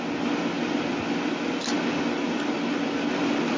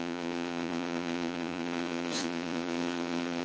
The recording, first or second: first